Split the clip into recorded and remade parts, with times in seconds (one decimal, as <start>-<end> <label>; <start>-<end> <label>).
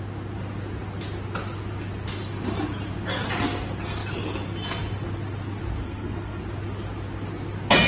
0.0-5.8 recorded; 5.8-6.4 remade; 6.4-7.9 recorded